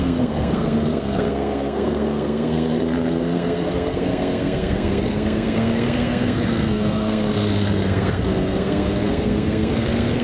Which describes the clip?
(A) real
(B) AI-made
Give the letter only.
B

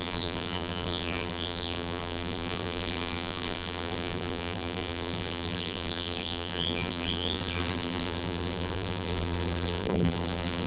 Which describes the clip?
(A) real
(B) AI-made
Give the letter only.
B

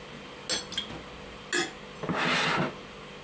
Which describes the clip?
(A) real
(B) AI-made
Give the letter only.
A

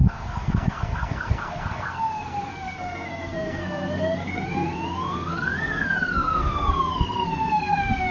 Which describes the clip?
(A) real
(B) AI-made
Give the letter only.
B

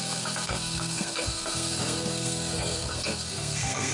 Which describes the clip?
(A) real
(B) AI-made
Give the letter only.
B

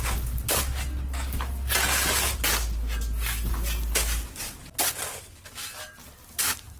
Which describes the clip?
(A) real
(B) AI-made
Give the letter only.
A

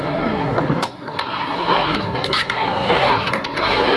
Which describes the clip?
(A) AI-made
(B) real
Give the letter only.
A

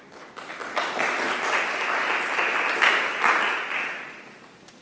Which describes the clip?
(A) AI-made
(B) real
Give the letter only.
B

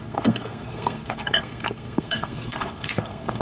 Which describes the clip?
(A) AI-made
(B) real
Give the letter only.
A